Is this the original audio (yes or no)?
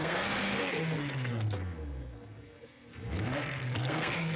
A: no